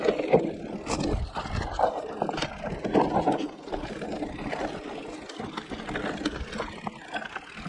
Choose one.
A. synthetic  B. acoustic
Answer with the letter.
B